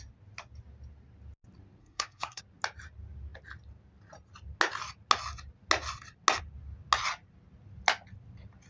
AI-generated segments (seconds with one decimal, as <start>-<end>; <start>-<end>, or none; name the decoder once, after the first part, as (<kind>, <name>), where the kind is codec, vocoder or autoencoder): 1.8-2.4 (codec, SNAC)